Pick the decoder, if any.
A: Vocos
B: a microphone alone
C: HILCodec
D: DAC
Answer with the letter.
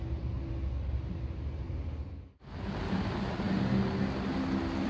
B